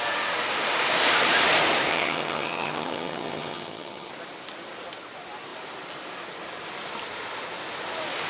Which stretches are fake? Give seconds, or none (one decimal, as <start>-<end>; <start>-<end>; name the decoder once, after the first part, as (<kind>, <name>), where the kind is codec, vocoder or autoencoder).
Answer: 1.9-4.1 (vocoder, HiFi-GAN)